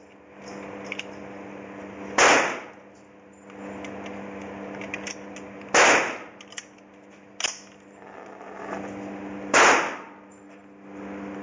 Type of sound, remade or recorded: recorded